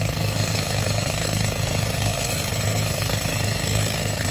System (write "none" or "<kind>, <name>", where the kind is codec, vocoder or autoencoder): codec, SNAC